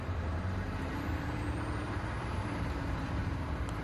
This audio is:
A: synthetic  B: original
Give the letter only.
A